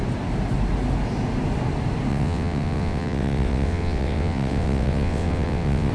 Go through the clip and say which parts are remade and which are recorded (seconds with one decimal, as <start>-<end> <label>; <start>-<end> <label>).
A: 0.0-2.1 recorded; 2.1-5.9 remade